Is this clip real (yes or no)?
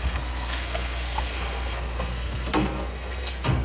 no